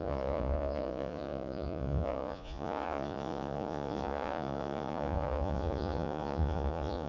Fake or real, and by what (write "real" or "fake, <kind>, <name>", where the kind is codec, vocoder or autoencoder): fake, vocoder, Vocos